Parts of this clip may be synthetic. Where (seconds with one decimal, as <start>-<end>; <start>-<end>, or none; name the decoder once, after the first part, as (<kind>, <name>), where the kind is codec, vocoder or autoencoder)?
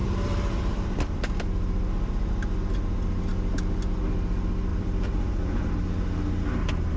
0.0-2.3 (vocoder, BigVGAN v2); 4.7-5.7